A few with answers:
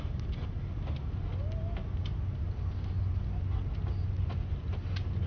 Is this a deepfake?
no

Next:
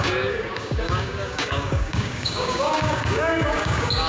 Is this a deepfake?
yes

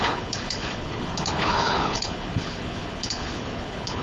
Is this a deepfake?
yes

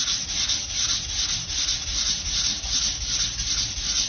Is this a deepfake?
no